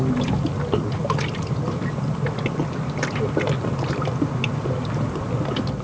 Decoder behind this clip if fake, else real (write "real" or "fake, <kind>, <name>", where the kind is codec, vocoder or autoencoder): real